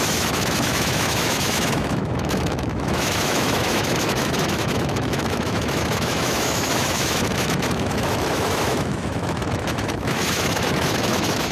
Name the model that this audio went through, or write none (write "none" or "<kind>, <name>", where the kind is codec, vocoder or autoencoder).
autoencoder, DAC-VAE